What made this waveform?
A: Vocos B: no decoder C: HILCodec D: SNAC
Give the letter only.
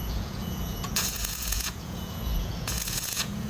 A